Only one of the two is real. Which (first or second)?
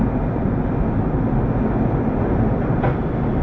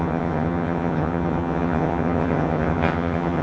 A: first